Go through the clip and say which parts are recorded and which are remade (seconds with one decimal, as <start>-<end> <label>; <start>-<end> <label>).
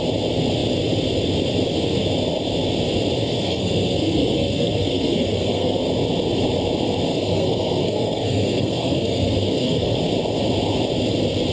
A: 0.0-3.2 recorded; 3.2-5.8 remade; 5.8-7.1 recorded; 7.1-10.0 remade; 10.0-11.5 recorded